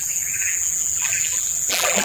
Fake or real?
fake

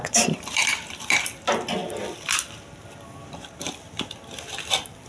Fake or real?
fake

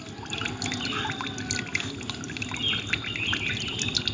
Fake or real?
real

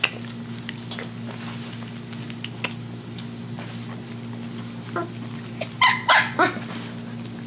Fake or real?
real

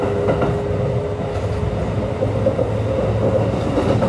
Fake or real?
real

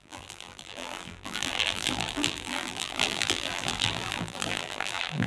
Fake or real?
fake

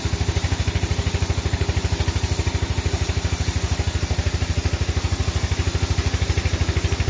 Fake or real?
real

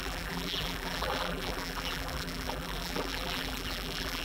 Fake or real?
fake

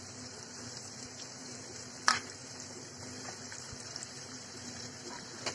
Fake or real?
fake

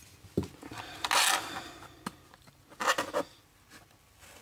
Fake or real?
real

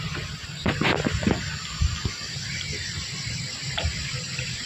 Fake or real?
real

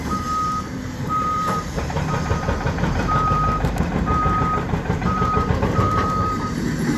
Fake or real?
fake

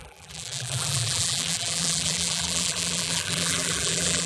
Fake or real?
fake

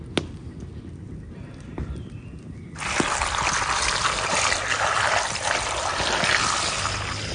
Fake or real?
real